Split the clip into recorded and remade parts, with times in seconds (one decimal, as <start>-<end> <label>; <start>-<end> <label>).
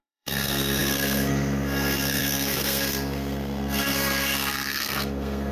0.0-5.5 remade